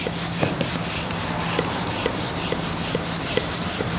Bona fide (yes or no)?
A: yes